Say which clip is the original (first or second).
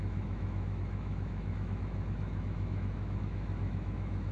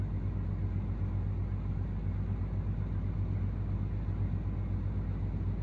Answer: second